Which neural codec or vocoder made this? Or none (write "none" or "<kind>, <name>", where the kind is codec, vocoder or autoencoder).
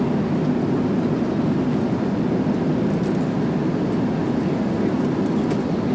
none